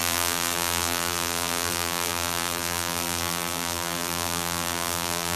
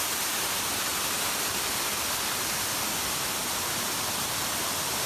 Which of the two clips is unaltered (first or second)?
second